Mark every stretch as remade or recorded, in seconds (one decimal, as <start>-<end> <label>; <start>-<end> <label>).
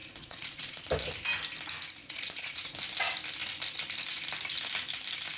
0.0-0.9 remade; 0.9-2.0 recorded; 2.0-2.7 remade; 2.7-5.4 recorded